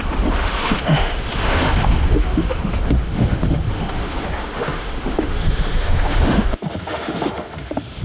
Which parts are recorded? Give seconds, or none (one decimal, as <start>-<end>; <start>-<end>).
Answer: none